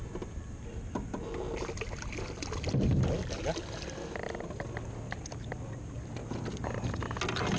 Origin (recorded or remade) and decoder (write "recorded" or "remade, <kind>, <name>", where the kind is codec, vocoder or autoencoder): recorded